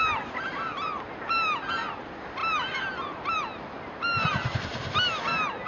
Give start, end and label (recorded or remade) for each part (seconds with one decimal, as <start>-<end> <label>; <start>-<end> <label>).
0.0-5.7 recorded